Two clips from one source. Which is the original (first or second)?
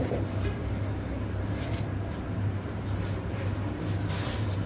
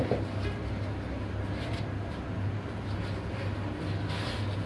second